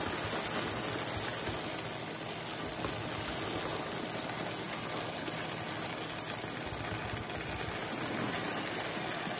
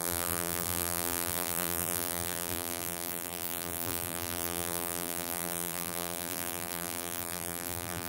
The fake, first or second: second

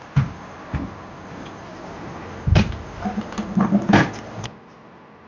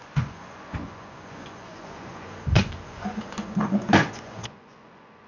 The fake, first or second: second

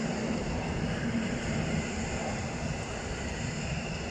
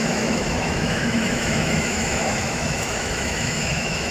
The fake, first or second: second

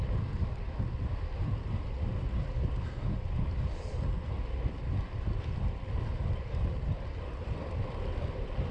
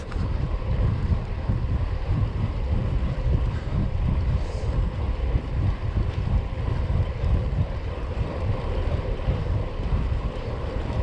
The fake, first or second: second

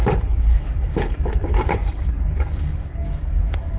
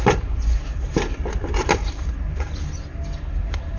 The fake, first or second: first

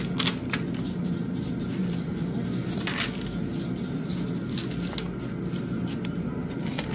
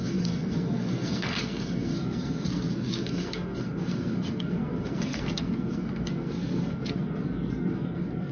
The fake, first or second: second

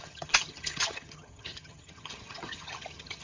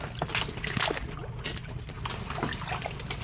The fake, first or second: first